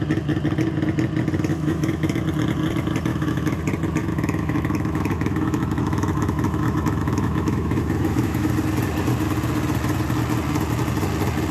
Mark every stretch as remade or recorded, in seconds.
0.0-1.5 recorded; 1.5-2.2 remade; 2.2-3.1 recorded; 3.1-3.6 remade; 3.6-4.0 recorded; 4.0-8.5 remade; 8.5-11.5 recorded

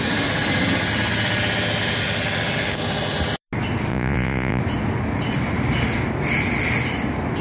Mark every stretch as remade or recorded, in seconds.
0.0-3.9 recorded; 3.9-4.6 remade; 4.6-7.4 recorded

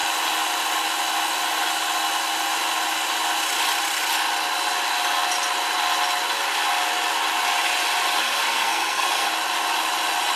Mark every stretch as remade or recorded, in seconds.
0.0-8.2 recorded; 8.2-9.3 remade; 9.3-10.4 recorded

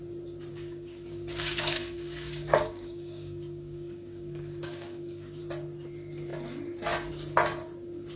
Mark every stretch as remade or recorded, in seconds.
0.0-0.5 recorded; 0.5-5.4 remade; 5.4-8.2 recorded